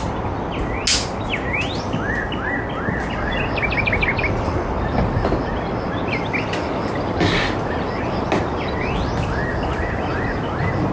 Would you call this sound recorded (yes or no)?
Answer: yes